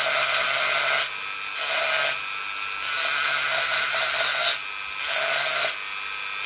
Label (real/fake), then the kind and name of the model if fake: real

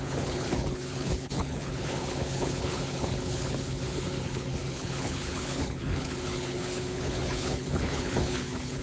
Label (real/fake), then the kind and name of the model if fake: fake, codec, HILCodec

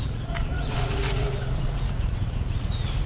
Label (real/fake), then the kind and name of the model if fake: fake, vocoder, Vocos